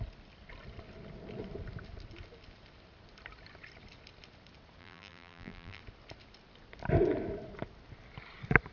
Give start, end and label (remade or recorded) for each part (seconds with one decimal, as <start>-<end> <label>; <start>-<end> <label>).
0.0-4.8 recorded; 4.8-5.8 remade; 5.8-8.7 recorded